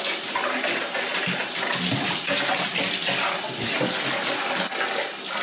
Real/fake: real